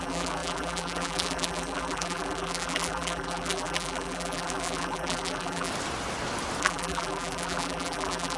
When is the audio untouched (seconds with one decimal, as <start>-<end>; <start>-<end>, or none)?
5.7-6.6